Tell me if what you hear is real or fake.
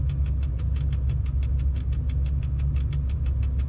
real